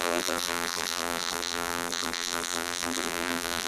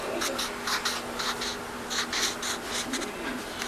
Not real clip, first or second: first